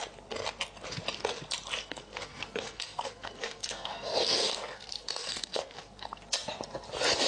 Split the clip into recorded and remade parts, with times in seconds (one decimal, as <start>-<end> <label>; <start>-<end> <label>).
0.0-1.8 recorded; 1.8-6.2 remade; 6.2-7.3 recorded